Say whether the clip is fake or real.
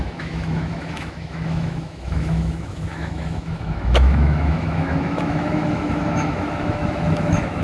fake